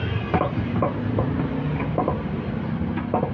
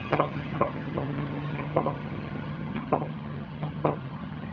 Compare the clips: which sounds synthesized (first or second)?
second